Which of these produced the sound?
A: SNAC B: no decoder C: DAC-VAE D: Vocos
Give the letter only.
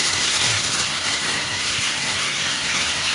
A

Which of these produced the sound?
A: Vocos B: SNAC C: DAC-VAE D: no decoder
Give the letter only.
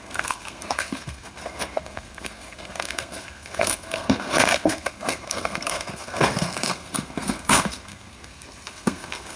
B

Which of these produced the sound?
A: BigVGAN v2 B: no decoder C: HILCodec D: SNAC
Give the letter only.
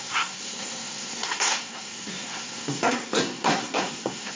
D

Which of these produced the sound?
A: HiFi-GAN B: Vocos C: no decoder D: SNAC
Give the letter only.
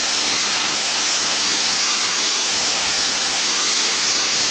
D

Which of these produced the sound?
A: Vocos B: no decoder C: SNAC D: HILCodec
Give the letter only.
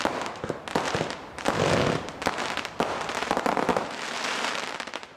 B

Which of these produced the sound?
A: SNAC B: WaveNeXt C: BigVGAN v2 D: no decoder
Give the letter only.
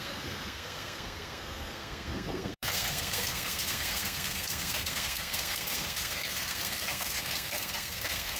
A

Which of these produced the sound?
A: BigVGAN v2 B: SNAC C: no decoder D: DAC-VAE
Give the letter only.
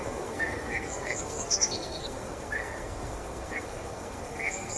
B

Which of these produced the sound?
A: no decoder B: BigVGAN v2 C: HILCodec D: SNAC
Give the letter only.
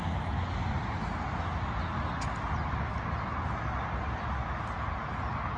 A